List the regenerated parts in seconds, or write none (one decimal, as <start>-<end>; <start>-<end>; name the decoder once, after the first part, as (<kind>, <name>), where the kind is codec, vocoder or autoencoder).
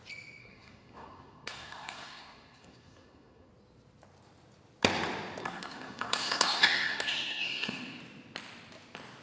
0.4-3.5 (codec, SNAC); 5.4-8.0